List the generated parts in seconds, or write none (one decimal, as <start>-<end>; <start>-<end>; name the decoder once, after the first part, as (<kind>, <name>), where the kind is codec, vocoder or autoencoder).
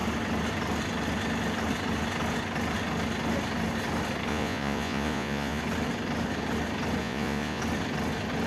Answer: 4.3-5.6 (vocoder, Vocos); 7.0-7.6